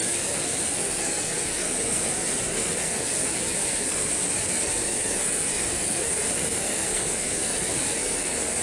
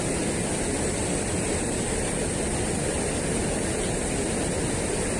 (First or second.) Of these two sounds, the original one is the second